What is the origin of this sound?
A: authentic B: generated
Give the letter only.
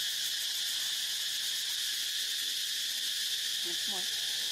A